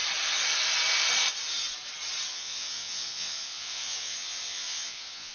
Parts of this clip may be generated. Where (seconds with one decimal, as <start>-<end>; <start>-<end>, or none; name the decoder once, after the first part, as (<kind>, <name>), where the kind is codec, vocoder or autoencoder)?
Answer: 2.3-5.3 (vocoder, Vocos)